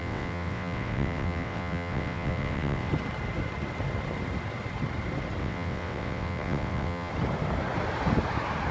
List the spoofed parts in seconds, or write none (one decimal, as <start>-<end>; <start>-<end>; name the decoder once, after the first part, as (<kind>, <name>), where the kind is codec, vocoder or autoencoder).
0.0-2.9 (vocoder, WaveNeXt); 5.4-7.1

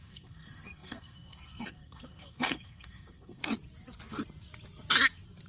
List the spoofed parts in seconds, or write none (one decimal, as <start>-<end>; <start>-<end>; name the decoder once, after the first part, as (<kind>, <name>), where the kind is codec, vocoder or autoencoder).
0.0-3.4 (codec, SNAC)

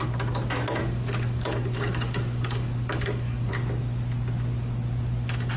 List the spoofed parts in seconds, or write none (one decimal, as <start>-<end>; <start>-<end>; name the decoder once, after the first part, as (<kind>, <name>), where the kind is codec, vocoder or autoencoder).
0.8-3.5 (codec, DAC)

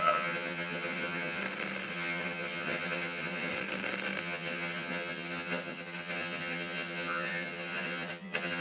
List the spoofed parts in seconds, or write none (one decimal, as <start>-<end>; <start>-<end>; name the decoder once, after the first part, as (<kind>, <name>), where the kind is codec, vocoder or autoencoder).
0.0-1.4 (vocoder, HiFi-GAN); 1.9-3.5; 4.2-8.6

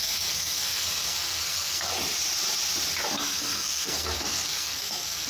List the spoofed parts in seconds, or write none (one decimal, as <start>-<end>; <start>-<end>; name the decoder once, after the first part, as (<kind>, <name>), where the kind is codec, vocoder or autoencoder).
0.0-1.9 (codec, SNAC); 3.1-5.3

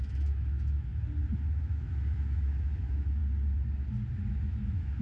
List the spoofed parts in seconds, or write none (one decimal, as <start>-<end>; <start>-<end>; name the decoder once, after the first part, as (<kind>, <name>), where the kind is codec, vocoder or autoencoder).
0.0-0.9 (autoencoder, DAC-VAE); 1.6-3.2; 4.3-5.0